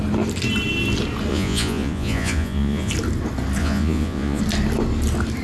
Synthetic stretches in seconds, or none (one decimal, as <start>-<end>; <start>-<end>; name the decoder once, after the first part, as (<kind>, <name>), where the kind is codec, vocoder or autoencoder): 1.3-2.9 (vocoder, Vocos); 3.6-4.4